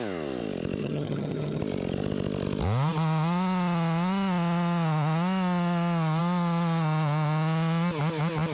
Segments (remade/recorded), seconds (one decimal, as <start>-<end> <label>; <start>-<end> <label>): 0.0-0.8 recorded; 0.8-1.6 remade; 1.6-8.5 recorded